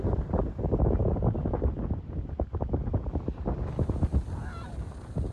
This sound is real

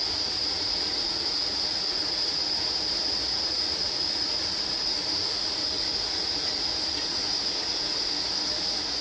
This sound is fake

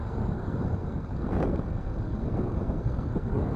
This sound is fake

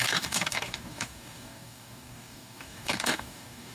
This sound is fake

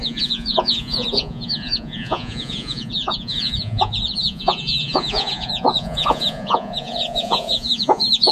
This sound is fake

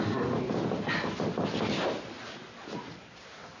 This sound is real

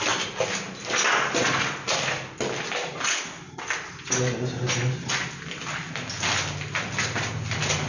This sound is real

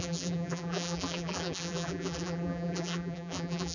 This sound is fake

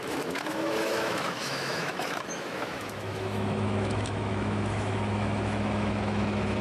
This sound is fake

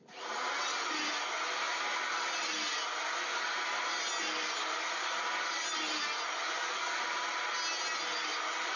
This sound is real